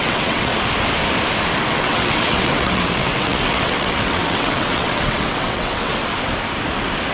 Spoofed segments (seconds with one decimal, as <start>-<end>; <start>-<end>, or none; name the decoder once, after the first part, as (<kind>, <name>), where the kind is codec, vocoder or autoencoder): 0.0-0.5 (vocoder, WaveNeXt); 1.7-5.9